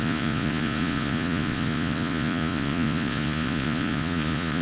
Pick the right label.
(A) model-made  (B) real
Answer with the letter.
A